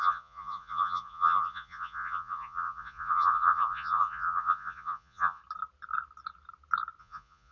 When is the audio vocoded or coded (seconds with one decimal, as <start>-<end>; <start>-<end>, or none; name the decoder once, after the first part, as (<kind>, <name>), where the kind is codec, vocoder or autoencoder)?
0.0-5.4 (vocoder, Vocos); 7.0-7.5